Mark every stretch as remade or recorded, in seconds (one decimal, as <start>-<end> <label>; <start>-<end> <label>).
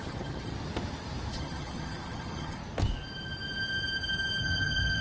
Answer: 0.0-0.5 remade; 0.5-1.3 recorded; 1.3-2.6 remade; 2.6-4.4 recorded; 4.4-5.0 remade